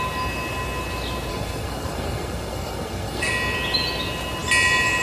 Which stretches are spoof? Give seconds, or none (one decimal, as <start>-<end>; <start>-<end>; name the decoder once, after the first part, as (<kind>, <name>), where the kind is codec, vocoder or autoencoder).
1.3-3.3 (codec, SNAC)